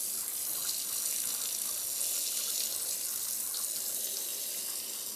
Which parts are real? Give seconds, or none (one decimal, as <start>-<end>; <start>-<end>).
0.0-5.2